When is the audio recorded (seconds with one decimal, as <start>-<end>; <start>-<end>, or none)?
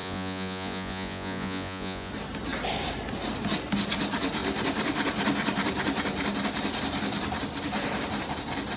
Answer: 2.1-8.8